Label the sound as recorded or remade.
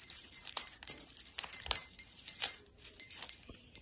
remade